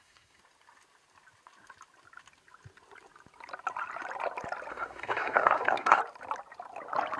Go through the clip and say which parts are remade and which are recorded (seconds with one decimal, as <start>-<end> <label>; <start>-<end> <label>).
0.0-0.4 remade; 0.4-4.7 recorded; 4.7-6.0 remade; 6.0-7.2 recorded